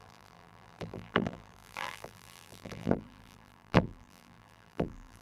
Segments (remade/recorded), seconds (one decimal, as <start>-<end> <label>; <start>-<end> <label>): 0.0-5.2 remade